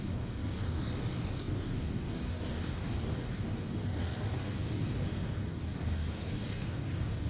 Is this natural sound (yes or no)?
no